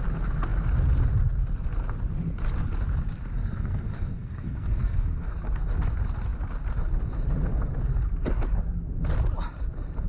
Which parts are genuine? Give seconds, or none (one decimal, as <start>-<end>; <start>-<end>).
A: 0.0-3.4; 5.4-10.1